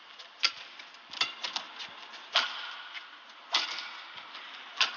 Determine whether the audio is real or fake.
real